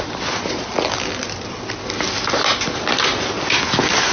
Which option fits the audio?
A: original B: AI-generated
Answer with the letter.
A